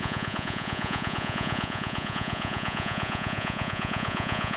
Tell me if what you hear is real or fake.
fake